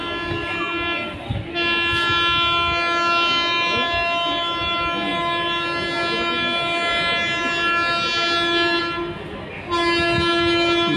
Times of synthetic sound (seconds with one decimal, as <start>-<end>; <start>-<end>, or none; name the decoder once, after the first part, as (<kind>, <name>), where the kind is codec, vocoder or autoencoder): none